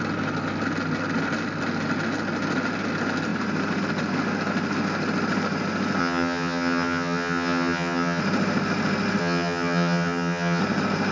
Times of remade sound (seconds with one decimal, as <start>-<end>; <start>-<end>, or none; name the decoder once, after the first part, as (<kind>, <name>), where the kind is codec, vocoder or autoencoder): 6.0-8.2 (vocoder, HiFi-GAN); 9.2-10.6